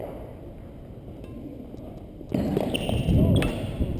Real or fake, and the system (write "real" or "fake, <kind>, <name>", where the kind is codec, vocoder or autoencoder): real